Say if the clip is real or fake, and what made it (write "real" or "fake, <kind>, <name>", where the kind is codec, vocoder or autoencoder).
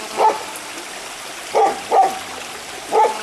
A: real